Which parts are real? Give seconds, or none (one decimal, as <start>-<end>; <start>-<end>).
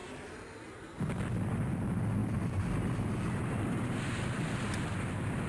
0.0-5.5